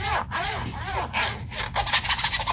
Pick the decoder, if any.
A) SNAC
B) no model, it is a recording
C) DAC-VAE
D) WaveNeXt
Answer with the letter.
B